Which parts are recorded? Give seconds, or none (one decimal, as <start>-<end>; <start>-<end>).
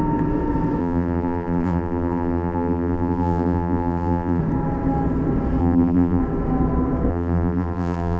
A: 0.0-0.8; 4.4-5.6; 6.2-7.1